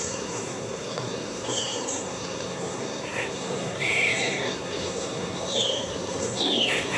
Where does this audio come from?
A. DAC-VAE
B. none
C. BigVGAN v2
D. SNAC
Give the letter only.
D